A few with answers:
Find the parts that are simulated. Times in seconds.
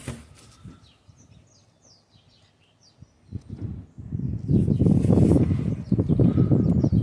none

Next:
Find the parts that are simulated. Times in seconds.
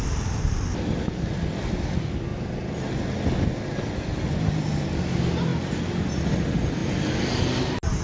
none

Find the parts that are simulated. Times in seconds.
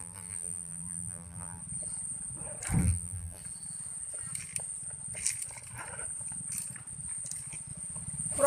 0.0-1.6 (vocoder, BigVGAN v2); 2.8-3.4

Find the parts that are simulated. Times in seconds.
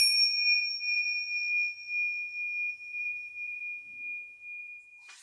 0.0-1.4 (vocoder, BigVGAN v2); 2.7-3.6; 4.6-5.2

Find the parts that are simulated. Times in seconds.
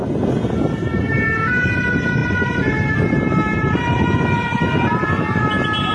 2.2-5.9 (vocoder, BigVGAN v2)